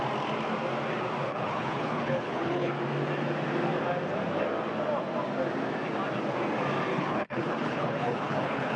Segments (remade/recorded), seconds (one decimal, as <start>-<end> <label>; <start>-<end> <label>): 0.0-1.3 recorded; 1.3-2.7 remade; 2.7-6.9 recorded; 6.9-8.8 remade